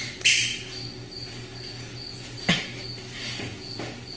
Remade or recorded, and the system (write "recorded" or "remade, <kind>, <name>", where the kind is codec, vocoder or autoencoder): recorded